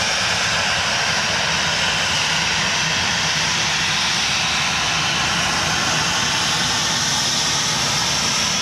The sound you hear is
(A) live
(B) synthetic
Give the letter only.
A